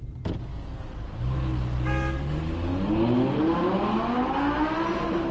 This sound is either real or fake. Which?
real